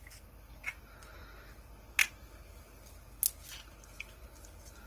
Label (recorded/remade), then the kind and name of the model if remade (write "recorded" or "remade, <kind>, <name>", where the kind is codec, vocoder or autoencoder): recorded